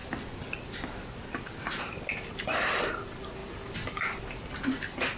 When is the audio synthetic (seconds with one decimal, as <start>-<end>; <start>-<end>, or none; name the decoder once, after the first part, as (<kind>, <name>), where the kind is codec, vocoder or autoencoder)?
none